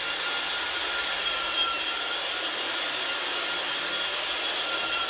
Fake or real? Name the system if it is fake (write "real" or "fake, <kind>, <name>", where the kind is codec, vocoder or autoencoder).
real